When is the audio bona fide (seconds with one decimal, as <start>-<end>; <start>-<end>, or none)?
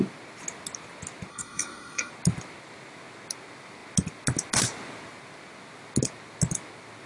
0.0-1.3; 2.1-7.1